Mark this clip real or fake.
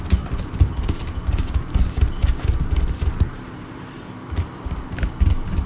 real